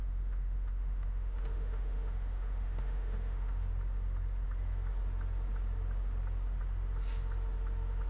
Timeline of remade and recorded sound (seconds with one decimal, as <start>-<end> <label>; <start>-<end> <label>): 0.0-3.7 remade; 3.7-8.1 recorded